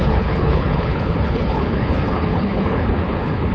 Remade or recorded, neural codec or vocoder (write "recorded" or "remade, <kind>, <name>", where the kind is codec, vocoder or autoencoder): remade, codec, HILCodec